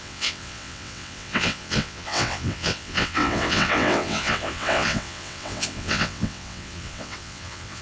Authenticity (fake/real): fake